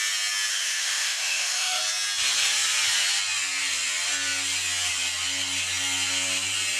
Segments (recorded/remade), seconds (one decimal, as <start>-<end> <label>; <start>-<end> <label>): 0.0-0.5 recorded; 0.5-1.8 remade; 1.8-6.8 recorded